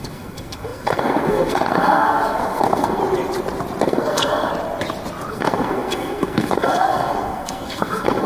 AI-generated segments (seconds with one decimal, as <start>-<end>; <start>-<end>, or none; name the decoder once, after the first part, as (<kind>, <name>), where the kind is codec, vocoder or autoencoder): 0.0-3.0 (codec, SNAC); 3.8-4.5; 5.3-8.3